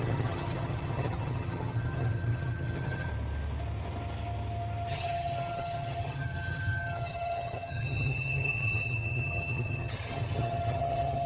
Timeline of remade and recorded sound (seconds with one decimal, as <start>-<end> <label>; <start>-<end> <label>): 0.0-3.1 remade; 3.1-4.9 recorded; 4.9-11.3 remade